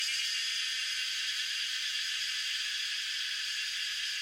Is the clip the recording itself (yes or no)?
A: no